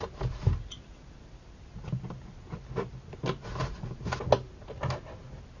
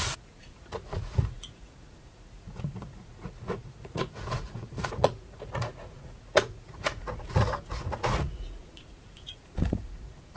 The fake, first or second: second